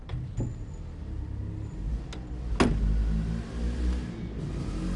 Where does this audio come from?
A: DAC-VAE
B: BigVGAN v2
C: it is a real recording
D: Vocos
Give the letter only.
C